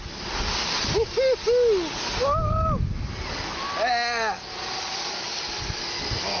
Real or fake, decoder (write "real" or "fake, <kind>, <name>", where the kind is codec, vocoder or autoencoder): real